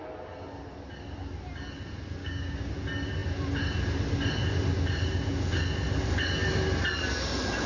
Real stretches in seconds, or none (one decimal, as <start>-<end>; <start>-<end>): 0.0-2.2; 2.7-7.7